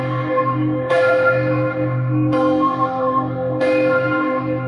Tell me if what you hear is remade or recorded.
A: remade